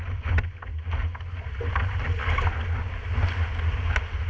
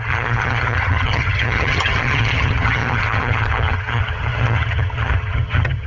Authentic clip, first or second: first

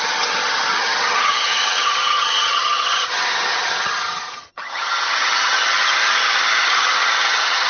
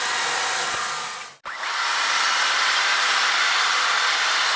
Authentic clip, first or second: second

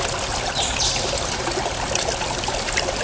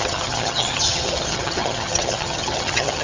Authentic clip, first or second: first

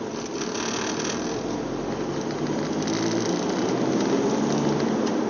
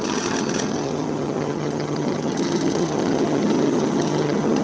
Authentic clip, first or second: first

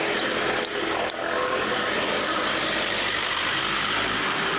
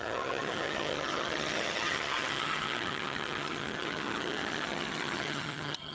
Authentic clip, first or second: first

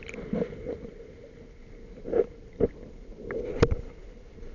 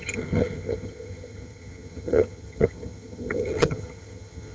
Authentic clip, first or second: first